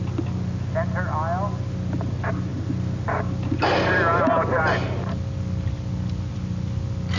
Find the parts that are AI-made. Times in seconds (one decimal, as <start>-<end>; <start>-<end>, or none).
none